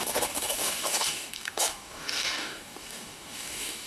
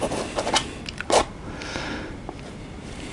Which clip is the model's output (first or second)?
first